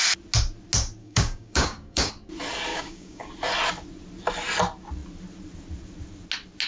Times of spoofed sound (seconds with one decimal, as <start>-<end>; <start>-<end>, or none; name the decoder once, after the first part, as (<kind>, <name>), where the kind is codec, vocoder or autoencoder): 1.0-2.1 (codec, DAC); 2.7-3.3